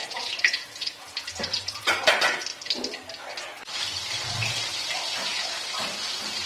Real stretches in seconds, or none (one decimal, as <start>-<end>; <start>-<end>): 1.9-6.5